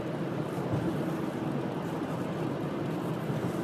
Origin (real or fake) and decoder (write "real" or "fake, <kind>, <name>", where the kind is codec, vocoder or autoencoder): real